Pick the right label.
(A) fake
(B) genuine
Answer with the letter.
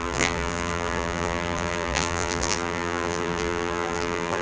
A